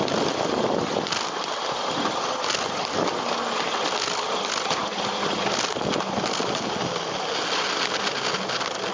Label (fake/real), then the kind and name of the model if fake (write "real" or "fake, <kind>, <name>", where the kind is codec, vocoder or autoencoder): real